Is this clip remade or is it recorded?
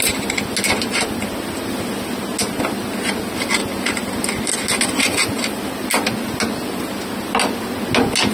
recorded